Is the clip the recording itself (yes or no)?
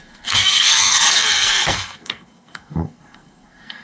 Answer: no